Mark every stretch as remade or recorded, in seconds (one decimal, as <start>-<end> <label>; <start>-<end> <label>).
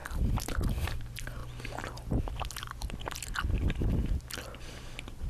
0.0-0.8 recorded; 0.8-1.4 remade; 1.4-4.6 recorded; 4.6-5.3 remade